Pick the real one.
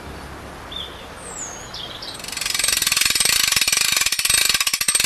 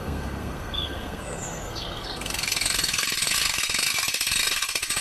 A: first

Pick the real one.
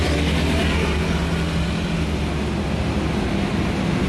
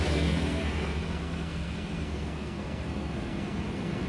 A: first